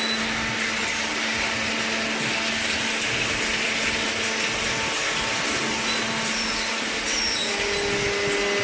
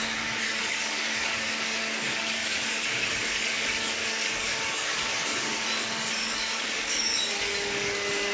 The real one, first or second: first